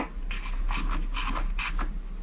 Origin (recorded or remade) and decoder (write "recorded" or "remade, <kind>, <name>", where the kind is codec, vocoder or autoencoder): recorded